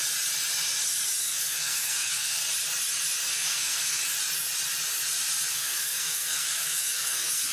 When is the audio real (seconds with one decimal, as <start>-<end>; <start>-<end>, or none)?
0.0-1.2; 2.4-3.3; 4.0-5.5